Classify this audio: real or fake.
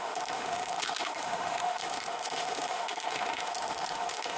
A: fake